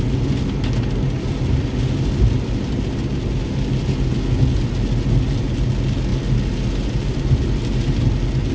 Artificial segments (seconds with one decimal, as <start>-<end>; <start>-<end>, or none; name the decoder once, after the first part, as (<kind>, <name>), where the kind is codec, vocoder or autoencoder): none